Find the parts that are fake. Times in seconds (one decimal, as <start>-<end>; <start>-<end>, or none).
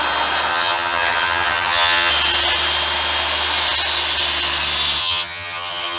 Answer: 0.5-2.1; 5.0-6.0